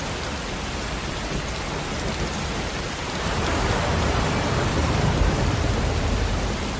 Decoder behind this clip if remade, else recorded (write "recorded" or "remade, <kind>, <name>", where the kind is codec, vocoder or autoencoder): recorded